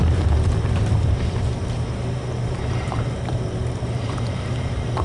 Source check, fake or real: fake